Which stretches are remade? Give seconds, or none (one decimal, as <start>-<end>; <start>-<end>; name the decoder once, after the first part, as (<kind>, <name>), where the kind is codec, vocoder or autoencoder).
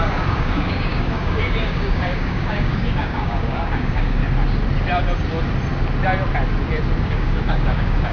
0.0-4.2 (codec, DAC); 7.0-8.1